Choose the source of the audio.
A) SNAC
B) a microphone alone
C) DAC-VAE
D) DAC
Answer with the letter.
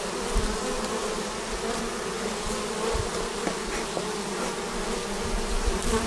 B